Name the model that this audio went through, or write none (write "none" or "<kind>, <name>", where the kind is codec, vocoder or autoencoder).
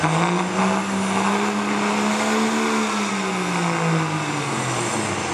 none